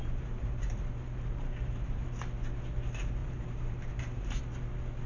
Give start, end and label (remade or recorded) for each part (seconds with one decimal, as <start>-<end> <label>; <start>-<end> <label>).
0.0-2.1 remade; 2.1-3.2 recorded; 3.2-4.4 remade; 4.4-5.1 recorded